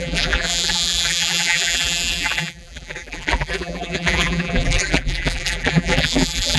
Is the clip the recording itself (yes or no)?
no